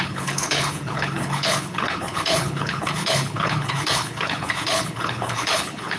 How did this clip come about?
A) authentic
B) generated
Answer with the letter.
B